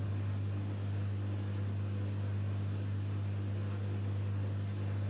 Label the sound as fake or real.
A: real